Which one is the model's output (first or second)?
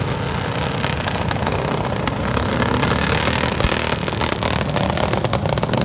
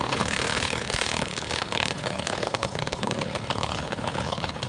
second